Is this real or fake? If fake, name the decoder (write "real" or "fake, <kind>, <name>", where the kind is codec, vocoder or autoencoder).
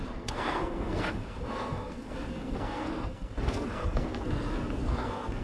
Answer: fake, codec, SNAC